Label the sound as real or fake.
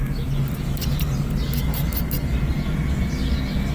real